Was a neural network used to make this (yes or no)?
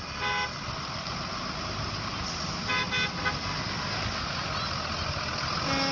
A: no